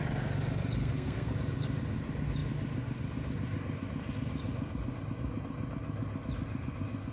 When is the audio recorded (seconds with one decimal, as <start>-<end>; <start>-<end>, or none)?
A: 0.0-0.8; 1.3-7.1